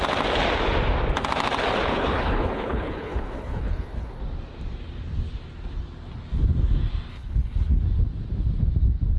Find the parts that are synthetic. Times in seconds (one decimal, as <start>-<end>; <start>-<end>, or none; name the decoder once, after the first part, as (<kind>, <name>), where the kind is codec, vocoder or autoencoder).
1.9-4.2 (codec, HILCodec); 7.1-7.8